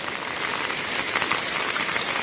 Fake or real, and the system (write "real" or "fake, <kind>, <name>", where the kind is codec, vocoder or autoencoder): real